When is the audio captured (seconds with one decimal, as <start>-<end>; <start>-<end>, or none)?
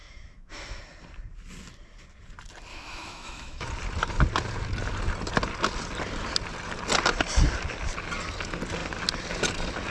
0.8-2.7; 3.7-9.9